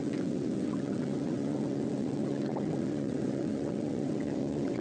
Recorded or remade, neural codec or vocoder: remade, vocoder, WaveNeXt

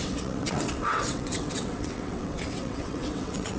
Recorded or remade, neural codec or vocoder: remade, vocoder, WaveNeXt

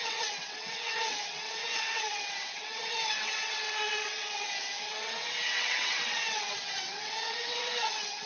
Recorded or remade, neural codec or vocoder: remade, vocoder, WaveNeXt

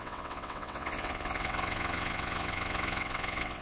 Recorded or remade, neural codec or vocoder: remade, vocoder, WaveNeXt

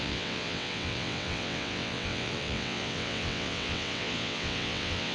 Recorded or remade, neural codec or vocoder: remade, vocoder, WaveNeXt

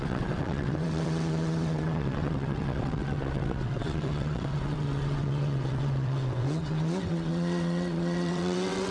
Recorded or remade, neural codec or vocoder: remade, vocoder, WaveNeXt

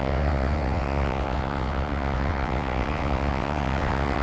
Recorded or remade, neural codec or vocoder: remade, vocoder, WaveNeXt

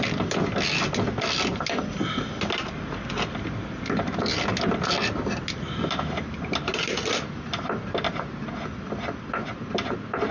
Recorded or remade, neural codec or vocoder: recorded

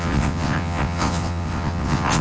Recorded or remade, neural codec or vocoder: remade, vocoder, WaveNeXt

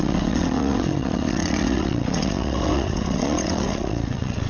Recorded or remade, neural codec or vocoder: remade, vocoder, WaveNeXt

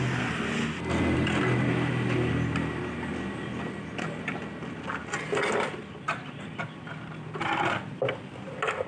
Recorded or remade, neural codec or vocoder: recorded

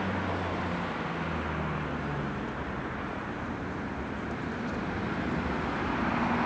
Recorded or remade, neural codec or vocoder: recorded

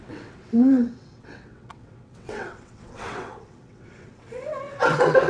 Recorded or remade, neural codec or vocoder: remade, vocoder, WaveNeXt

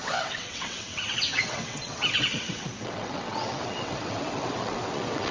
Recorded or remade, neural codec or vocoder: remade, vocoder, WaveNeXt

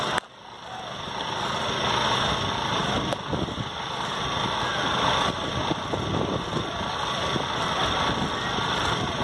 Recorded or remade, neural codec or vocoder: recorded